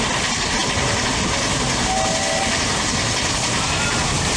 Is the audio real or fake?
real